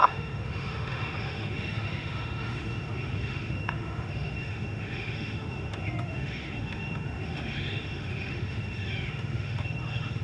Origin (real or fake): fake